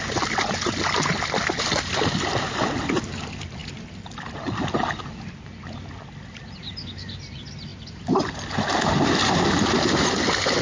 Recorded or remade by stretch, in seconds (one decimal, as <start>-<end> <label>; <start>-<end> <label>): 0.0-10.6 recorded